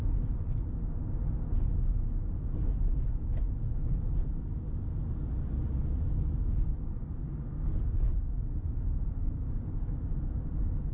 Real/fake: real